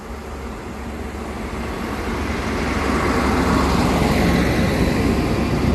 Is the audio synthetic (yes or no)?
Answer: no